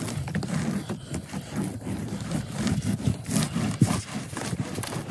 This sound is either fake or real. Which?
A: real